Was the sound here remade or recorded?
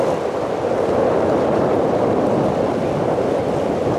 recorded